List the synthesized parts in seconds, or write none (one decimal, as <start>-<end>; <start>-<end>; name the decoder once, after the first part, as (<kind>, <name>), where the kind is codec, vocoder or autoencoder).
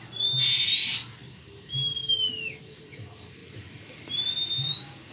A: none